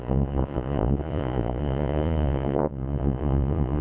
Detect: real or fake fake